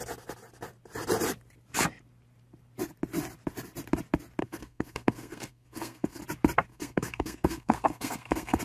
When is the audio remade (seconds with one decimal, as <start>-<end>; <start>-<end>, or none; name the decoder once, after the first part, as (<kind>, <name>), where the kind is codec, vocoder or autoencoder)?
4.4-6.2 (codec, SNAC); 6.7-8.6